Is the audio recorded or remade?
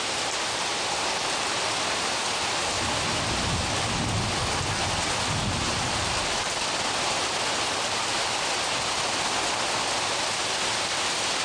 recorded